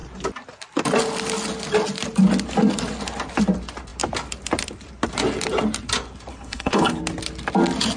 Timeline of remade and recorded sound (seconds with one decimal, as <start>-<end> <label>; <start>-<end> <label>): 0.0-6.3 recorded; 6.3-7.0 remade; 7.0-8.0 recorded